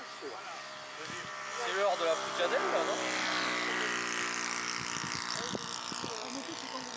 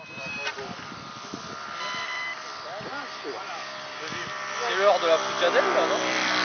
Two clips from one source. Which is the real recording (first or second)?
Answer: first